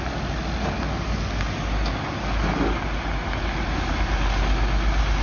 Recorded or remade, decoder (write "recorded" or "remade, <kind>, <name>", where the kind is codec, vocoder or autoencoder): recorded